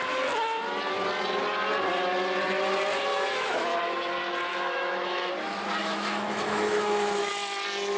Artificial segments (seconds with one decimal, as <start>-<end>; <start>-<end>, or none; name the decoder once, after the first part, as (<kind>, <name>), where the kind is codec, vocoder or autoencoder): 3.1-3.8 (autoencoder, DAC-VAE); 4.5-5.3; 5.8-7.3

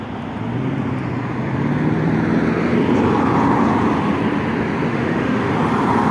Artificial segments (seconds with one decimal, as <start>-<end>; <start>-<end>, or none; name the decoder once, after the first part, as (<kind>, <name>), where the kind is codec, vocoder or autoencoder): 4.9-5.5 (autoencoder, DAC-VAE)

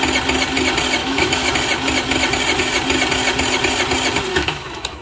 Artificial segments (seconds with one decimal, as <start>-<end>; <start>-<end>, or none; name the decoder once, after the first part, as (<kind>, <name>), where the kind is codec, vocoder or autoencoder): 1.0-1.5 (autoencoder, DAC-VAE); 4.3-5.0

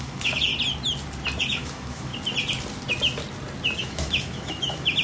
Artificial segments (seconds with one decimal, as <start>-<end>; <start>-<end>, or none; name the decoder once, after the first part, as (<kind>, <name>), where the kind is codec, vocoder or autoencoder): 0.0-0.5 (autoencoder, DAC-VAE); 1.4-2.1; 3.8-5.0

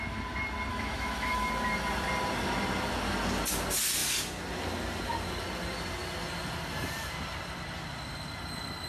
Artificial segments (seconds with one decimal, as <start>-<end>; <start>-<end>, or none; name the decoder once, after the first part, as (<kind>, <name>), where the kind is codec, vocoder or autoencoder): 0.7-1.5 (autoencoder, DAC-VAE)

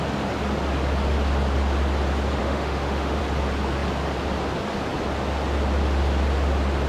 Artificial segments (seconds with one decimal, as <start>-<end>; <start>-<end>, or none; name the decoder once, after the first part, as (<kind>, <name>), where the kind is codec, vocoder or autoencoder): 2.4-3.2 (autoencoder, DAC-VAE)

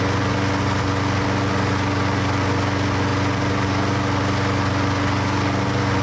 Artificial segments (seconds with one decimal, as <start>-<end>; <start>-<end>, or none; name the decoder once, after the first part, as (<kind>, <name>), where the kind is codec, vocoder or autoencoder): none